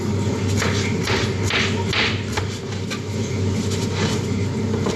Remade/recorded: recorded